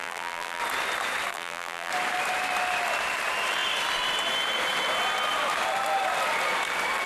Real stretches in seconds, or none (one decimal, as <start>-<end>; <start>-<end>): 0.6-1.3; 1.9-7.1